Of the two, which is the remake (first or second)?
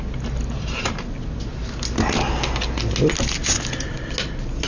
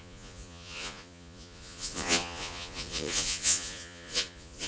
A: second